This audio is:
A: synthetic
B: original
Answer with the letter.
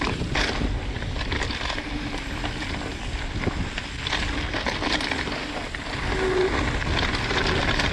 B